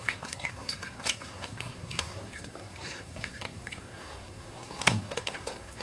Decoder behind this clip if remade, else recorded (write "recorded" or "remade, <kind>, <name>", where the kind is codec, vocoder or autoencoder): remade, codec, SNAC